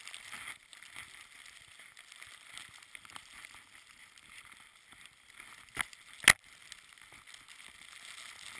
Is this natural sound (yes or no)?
yes